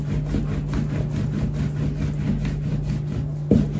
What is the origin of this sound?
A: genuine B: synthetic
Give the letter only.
A